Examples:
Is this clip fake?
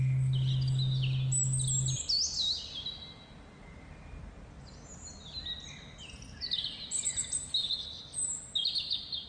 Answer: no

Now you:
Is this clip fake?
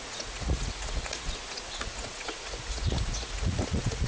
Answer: yes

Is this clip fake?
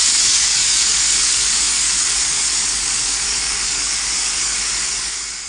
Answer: yes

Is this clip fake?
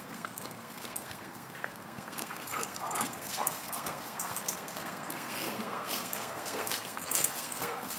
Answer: yes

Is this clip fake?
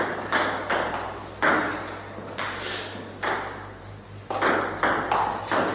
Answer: no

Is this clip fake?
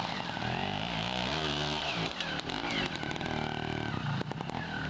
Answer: no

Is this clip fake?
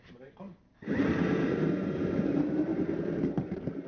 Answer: yes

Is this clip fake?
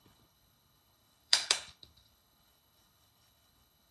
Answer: yes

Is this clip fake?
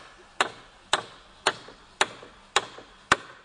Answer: no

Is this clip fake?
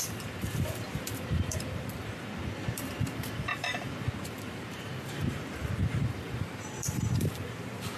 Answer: yes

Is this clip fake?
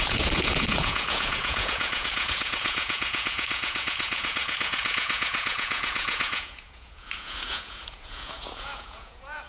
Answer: yes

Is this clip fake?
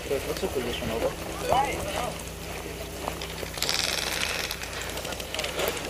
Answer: yes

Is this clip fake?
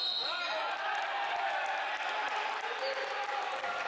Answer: no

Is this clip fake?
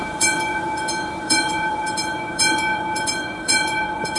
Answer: yes